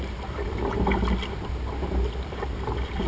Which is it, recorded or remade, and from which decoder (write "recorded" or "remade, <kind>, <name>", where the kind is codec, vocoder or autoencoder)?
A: recorded